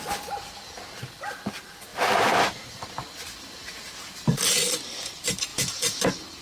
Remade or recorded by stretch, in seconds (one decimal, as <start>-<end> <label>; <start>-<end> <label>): 0.0-1.9 recorded; 1.9-3.1 remade; 3.1-3.6 recorded; 3.6-4.6 remade; 4.6-6.4 recorded